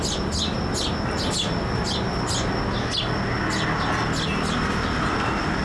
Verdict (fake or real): real